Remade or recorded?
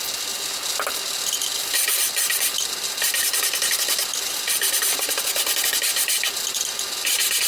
recorded